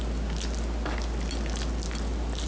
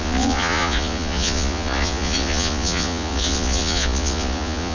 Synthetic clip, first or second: second